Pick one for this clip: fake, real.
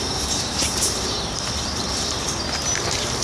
fake